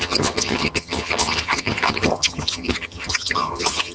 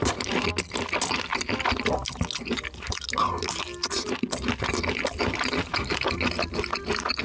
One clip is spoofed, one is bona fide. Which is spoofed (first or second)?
first